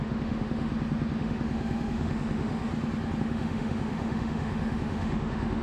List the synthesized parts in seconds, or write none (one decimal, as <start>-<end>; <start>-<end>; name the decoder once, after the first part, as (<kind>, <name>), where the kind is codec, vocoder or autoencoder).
0.0-0.7 (autoencoder, DAC-VAE); 1.2-2.7; 3.2-5.6